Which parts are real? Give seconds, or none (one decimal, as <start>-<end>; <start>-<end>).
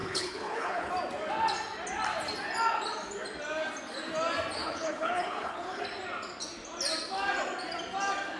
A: 0.9-4.6; 5.8-8.4